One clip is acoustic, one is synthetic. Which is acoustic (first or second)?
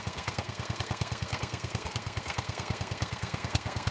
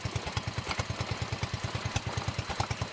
second